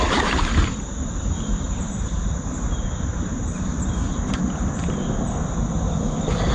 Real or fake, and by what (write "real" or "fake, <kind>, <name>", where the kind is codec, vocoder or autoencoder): real